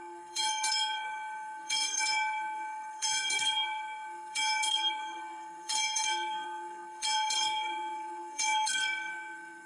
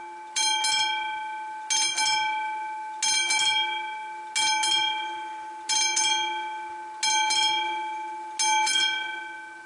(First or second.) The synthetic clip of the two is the first